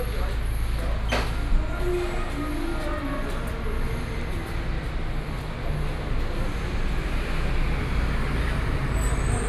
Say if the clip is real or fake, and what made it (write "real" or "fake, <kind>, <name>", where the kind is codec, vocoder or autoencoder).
real